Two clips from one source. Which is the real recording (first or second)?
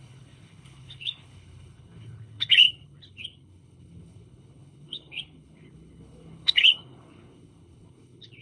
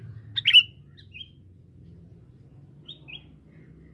second